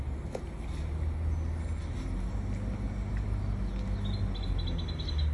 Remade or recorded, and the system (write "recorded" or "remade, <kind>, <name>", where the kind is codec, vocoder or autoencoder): recorded